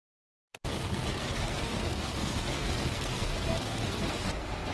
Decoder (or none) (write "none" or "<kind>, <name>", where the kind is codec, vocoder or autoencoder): codec, SNAC